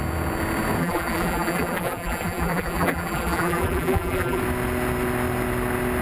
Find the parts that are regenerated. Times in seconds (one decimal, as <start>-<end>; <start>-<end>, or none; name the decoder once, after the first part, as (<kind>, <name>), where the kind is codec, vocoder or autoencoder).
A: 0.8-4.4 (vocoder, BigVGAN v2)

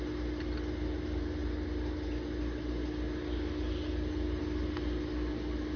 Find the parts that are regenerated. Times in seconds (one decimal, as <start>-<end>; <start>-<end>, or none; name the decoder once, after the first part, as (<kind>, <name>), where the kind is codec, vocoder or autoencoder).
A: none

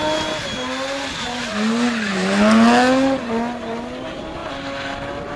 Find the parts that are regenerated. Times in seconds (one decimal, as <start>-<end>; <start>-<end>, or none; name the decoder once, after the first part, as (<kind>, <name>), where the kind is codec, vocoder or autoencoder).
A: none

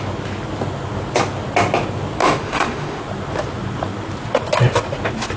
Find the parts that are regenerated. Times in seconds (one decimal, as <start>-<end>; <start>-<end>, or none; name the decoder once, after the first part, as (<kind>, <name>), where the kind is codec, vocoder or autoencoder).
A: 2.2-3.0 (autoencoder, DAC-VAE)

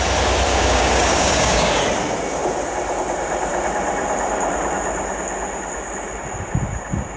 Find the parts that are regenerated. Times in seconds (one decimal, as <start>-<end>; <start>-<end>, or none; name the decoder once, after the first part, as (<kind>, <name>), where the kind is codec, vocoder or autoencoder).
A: 0.5-1.8 (codec, DAC)

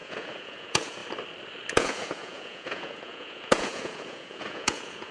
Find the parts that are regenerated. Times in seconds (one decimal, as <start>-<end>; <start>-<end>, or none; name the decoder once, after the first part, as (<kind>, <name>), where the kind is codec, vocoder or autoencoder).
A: 0.0-1.0 (vocoder, Vocos); 1.7-5.1

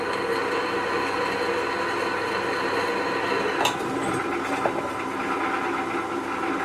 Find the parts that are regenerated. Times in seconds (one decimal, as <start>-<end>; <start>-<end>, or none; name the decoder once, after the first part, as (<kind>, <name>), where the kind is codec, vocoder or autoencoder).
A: none